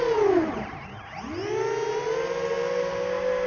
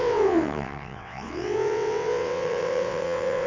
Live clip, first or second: first